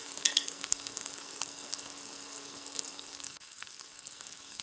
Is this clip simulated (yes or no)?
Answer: yes